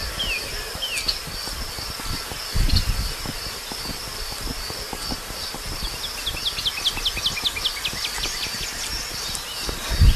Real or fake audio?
real